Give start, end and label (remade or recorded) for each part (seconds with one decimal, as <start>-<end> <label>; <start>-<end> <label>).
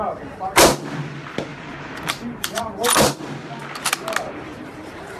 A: 0.0-1.5 recorded; 1.5-3.2 remade; 3.2-5.2 recorded